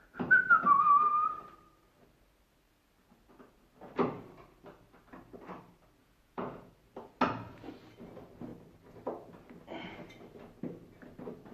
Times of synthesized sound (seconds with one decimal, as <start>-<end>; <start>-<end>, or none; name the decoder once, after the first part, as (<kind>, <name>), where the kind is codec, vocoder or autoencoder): 6.0-6.7 (vocoder, Vocos)